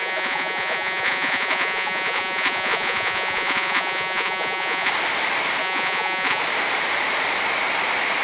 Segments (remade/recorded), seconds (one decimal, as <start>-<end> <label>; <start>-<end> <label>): 0.0-4.9 remade; 4.9-5.6 recorded; 5.6-6.4 remade; 6.4-8.2 recorded